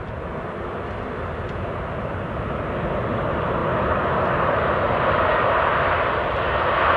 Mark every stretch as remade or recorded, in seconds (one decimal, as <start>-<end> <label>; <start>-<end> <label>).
0.0-7.0 recorded